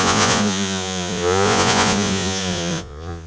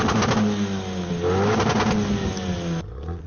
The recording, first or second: second